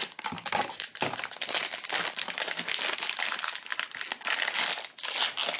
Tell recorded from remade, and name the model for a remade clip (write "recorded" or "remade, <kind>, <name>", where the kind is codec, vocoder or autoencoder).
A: recorded